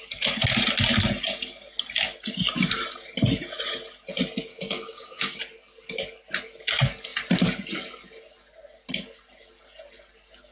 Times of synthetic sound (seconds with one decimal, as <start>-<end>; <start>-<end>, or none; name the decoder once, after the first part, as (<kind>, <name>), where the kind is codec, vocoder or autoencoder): 4.5-5.4 (codec, DAC)